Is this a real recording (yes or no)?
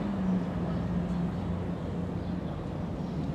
yes